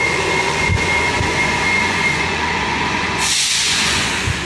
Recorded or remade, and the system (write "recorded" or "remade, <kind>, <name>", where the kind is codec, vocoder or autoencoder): remade, vocoder, Vocos